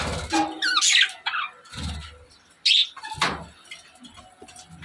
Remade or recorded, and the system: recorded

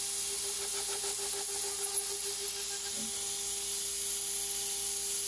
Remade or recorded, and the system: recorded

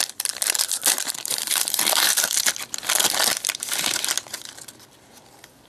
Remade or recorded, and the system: remade, vocoder, BigVGAN v2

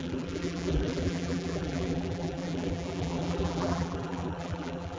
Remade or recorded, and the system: remade, vocoder, BigVGAN v2